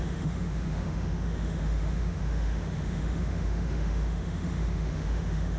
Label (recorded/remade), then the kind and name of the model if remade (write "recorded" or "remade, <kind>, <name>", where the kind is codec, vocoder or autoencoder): remade, autoencoder, DAC-VAE